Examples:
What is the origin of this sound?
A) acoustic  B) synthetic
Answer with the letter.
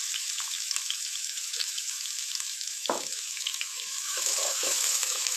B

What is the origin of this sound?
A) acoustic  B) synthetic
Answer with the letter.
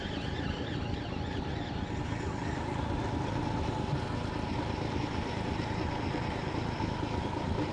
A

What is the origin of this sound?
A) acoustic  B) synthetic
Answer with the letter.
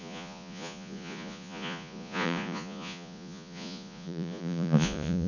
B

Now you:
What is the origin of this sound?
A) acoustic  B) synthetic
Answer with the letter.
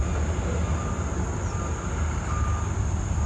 A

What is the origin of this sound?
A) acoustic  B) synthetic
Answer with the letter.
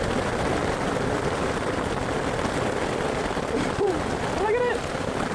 A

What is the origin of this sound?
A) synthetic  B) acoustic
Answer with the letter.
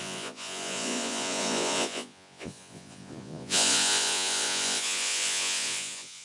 A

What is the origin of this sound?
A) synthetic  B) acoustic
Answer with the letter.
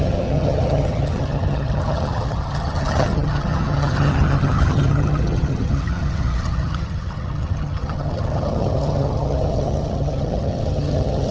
A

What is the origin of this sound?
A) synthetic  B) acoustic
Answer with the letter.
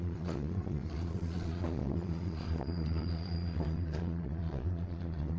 A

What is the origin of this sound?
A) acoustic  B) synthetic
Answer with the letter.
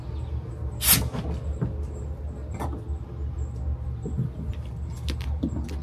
A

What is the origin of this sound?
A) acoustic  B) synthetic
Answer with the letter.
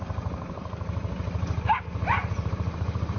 B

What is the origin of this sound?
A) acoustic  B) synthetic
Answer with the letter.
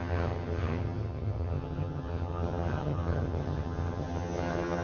B